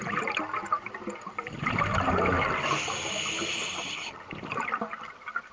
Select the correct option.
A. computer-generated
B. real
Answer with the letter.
B